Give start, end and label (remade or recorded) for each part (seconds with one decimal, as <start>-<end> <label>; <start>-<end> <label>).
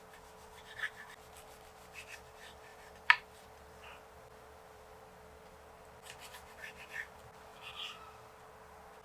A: 0.0-2.7 recorded; 2.7-5.0 remade; 5.0-9.0 recorded